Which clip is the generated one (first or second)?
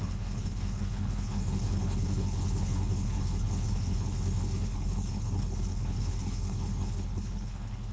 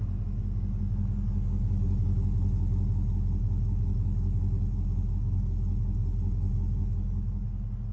first